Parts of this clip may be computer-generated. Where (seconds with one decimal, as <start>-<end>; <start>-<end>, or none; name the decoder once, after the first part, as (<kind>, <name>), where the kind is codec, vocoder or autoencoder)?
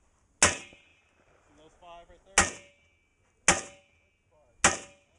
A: none